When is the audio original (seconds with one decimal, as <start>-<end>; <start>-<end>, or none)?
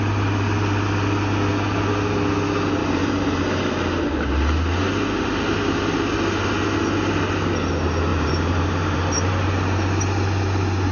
0.0-2.8; 4.3-8.1; 9.5-10.9